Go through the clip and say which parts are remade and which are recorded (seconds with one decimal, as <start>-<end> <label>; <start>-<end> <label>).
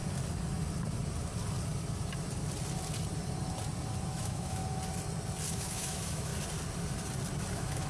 0.0-4.1 recorded; 4.1-4.6 remade; 4.6-5.5 recorded; 5.5-6.3 remade; 6.3-7.5 recorded; 7.5-7.9 remade